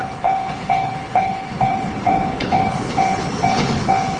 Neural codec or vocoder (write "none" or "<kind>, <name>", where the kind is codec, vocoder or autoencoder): codec, HILCodec